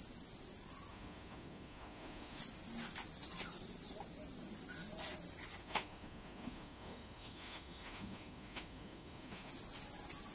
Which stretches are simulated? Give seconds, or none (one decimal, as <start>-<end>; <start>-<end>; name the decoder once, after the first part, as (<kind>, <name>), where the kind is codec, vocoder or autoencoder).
0.9-2.4 (autoencoder, DAC-VAE); 5.6-9.5

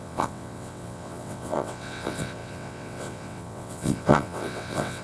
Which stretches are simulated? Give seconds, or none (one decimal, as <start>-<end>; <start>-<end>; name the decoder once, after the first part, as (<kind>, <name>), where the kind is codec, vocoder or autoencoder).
0.0-5.0 (vocoder, WaveNeXt)

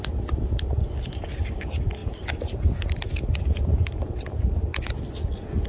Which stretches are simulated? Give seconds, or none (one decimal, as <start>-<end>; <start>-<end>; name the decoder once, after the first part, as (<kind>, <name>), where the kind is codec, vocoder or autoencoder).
none

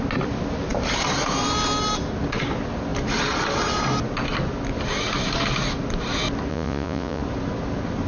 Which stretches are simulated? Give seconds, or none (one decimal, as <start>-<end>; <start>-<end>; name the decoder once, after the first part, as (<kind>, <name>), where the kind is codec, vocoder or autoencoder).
6.5-7.2 (vocoder, Vocos)

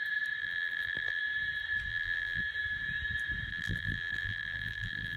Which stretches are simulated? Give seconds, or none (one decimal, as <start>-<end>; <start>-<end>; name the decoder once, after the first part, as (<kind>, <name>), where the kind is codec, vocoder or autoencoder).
0.4-1.2 (vocoder, BigVGAN v2); 1.9-2.4; 3.5-5.2

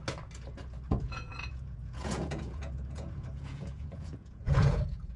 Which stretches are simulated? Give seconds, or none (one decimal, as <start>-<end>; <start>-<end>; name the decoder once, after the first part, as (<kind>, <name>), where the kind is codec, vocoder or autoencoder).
0.9-5.2 (vocoder, Vocos)

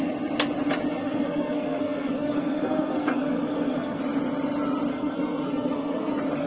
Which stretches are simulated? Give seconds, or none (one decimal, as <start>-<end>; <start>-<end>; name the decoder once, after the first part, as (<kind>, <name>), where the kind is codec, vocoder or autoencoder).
0.9-4.0 (codec, SNAC); 4.9-6.1

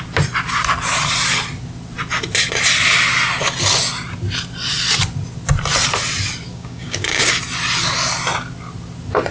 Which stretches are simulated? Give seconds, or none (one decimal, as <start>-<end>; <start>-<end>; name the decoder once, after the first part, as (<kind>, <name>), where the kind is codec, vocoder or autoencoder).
6.5-7.3 (codec, DAC)